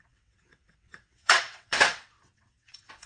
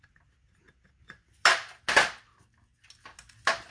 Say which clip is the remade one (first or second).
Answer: first